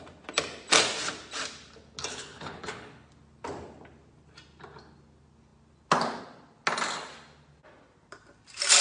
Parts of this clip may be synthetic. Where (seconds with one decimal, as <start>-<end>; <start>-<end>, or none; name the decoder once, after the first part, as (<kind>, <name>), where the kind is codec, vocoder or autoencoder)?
2.1-3.1 (codec, HILCodec)